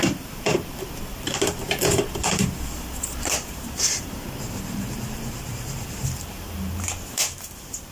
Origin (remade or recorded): remade